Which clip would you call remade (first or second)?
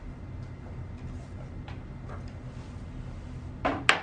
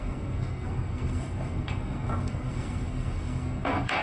second